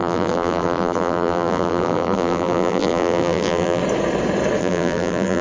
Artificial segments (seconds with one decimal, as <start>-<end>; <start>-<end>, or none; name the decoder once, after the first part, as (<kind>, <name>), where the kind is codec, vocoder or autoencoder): 0.0-3.8 (vocoder, BigVGAN v2); 4.6-5.4